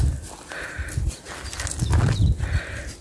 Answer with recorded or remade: recorded